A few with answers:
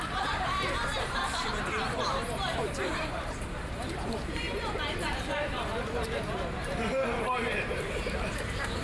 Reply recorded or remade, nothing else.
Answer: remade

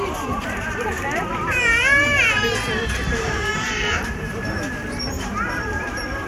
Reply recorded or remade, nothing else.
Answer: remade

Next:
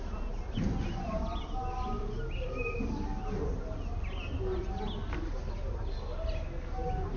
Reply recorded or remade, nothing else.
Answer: recorded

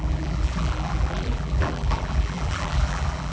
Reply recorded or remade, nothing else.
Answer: remade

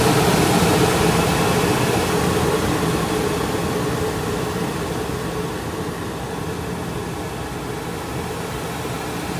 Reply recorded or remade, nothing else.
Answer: recorded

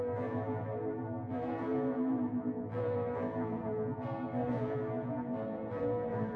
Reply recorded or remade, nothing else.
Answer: remade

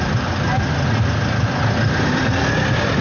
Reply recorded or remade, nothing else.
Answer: recorded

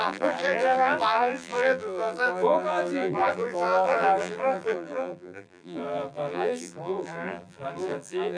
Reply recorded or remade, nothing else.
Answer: remade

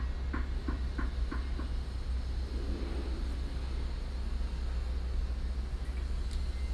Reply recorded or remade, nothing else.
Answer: recorded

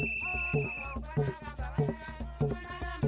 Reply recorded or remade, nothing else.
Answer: recorded